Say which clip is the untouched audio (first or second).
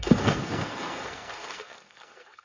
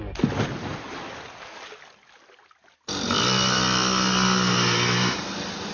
second